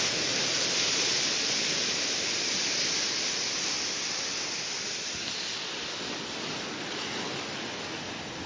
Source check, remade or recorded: recorded